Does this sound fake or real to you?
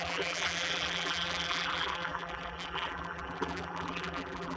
fake